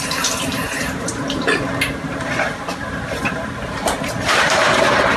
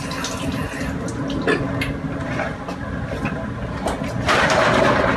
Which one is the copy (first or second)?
first